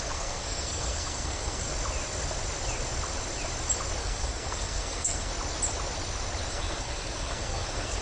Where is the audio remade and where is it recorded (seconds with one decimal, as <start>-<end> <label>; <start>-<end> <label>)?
0.0-1.7 remade; 1.7-4.0 recorded; 4.0-5.3 remade; 5.3-6.5 recorded; 6.5-8.0 remade